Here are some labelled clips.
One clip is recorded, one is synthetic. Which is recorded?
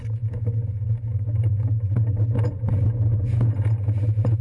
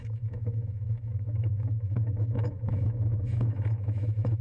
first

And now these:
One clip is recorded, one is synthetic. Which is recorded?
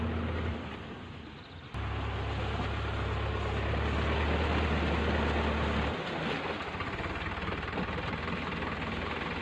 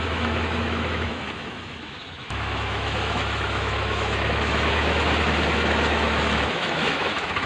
first